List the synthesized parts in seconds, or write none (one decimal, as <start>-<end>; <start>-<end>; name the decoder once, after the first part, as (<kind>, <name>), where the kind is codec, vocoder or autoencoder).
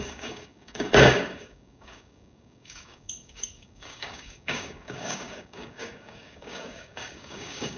0.0-7.8 (codec, DAC)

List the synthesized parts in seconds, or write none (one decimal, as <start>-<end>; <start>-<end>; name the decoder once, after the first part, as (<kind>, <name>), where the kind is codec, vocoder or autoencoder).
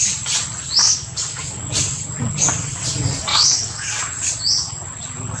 0.8-1.6 (codec, DAC); 3.3-4.0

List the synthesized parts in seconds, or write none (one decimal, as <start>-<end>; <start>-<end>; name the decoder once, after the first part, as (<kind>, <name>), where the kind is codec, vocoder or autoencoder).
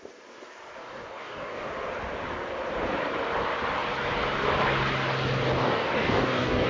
0.8-1.7 (codec, DAC); 5.6-6.7